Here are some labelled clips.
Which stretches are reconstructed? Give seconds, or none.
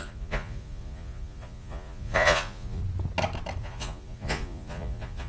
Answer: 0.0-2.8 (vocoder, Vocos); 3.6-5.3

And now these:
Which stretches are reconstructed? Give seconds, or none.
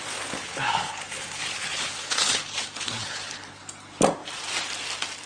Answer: 0.4-3.6 (codec, HILCodec)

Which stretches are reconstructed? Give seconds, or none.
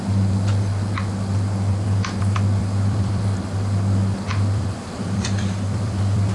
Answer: 2.6-3.2 (vocoder, BigVGAN v2); 4.3-6.3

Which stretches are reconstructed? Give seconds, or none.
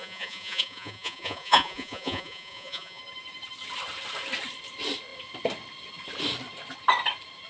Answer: 0.0-3.0 (vocoder, Vocos)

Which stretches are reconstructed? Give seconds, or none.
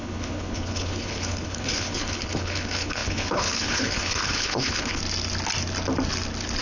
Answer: 0.0-5.0 (codec, HILCodec)